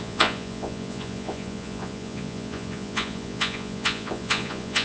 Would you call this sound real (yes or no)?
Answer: no